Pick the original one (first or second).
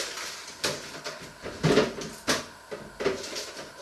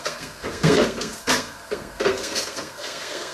first